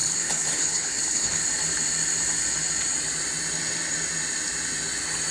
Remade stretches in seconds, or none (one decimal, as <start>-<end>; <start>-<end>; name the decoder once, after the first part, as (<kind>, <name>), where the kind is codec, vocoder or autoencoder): 0.0-1.4 (codec, HILCodec)